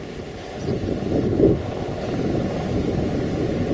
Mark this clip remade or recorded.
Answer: recorded